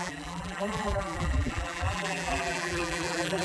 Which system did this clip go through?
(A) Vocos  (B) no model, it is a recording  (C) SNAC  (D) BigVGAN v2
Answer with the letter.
D